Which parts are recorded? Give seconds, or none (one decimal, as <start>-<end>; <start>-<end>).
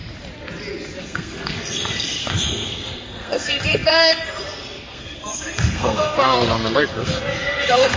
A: 0.0-1.0